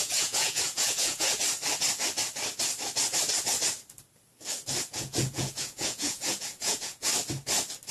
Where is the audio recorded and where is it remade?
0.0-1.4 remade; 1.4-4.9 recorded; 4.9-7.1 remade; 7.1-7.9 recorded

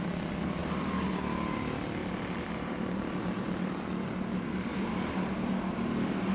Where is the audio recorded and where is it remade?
0.0-2.0 recorded; 2.0-3.7 remade; 3.7-4.7 recorded; 4.7-5.7 remade; 5.7-6.3 recorded

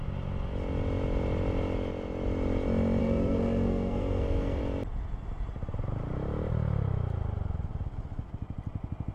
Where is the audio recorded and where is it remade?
0.0-3.0 recorded; 3.0-4.6 remade; 4.6-9.1 recorded

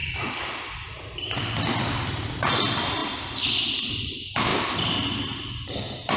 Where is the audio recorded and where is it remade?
0.0-2.5 remade; 2.5-3.0 recorded; 3.0-4.1 remade; 4.1-4.5 recorded; 4.5-6.2 remade